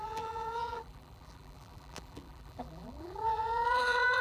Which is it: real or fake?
fake